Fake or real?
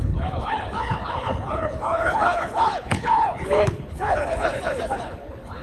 fake